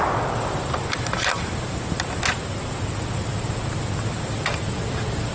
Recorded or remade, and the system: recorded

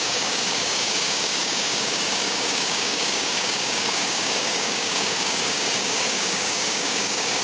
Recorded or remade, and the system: remade, codec, DAC